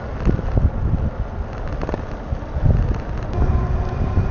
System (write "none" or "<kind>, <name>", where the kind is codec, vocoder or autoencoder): none